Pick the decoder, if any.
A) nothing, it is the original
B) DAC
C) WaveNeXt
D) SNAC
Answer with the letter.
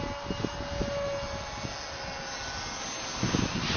A